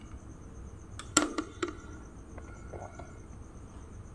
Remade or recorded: recorded